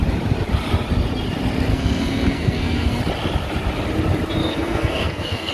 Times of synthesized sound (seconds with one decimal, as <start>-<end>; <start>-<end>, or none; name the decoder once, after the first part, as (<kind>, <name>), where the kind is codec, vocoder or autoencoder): 1.7-3.0 (codec, SNAC); 4.4-5.5